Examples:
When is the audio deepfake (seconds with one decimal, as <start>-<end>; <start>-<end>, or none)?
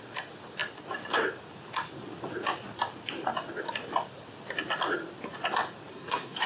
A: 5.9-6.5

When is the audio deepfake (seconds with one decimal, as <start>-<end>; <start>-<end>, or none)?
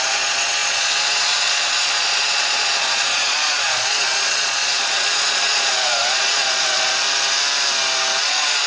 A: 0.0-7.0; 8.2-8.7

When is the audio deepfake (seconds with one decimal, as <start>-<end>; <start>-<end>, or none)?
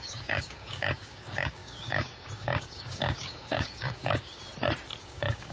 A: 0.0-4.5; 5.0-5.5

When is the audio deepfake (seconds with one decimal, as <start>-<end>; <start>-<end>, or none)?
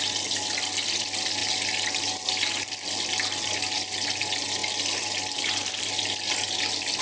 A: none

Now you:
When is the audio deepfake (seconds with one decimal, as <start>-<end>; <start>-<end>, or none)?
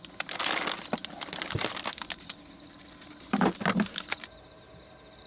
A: none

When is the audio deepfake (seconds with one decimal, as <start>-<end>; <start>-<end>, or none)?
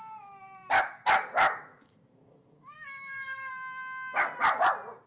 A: 1.7-3.5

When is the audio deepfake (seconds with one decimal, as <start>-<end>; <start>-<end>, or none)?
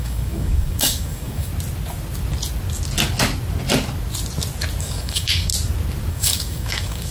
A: 0.0-1.5; 4.8-5.5; 6.1-7.1